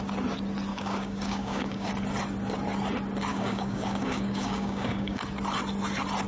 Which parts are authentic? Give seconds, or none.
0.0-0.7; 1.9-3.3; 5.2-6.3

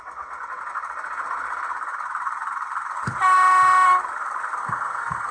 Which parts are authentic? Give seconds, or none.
0.0-4.6

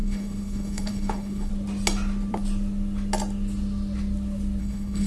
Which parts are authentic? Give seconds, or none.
1.5-4.6

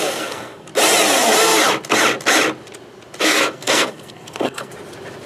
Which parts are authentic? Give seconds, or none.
0.7-3.2; 4.7-5.3

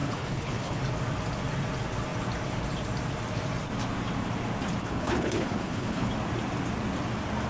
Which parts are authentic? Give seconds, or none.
0.8-4.8; 6.1-7.5

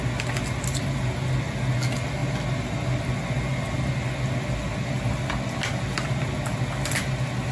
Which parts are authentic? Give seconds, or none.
0.0-7.5

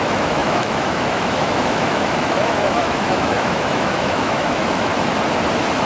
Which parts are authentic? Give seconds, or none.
4.9-5.9

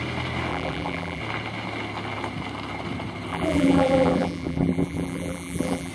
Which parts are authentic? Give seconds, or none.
0.0-0.5; 1.2-3.3